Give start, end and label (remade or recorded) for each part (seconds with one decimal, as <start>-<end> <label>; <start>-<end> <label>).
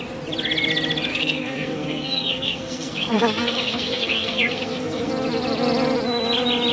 0.0-1.1 recorded; 1.1-5.1 remade; 5.1-6.7 recorded